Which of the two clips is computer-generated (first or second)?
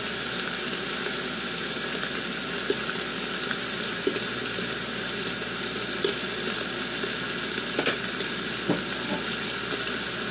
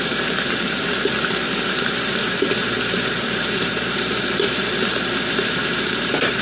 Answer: second